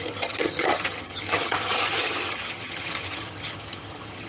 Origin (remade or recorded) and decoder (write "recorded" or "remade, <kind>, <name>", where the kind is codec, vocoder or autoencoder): remade, vocoder, HiFi-GAN